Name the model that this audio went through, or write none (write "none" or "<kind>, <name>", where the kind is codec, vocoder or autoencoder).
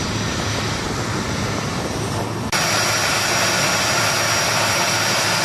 none